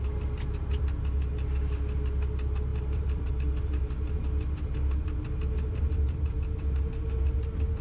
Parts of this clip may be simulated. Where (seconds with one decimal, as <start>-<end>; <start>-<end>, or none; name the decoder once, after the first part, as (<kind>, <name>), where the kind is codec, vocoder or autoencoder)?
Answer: 2.7-3.3 (vocoder, BigVGAN v2)